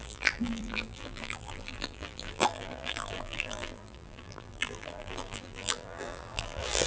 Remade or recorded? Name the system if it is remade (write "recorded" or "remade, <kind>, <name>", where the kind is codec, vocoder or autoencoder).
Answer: remade, vocoder, BigVGAN v2